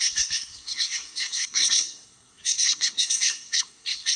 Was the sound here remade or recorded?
remade